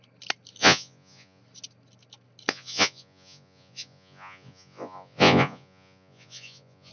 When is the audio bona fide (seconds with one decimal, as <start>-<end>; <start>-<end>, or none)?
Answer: 0.0-0.6; 1.4-2.5